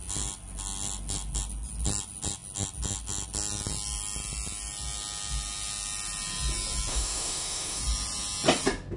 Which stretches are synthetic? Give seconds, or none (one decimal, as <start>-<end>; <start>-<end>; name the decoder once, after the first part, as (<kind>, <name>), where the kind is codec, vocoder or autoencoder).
6.9-7.8 (autoencoder, DAC-VAE)